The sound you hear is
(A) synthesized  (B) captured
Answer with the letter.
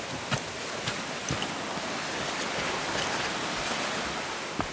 B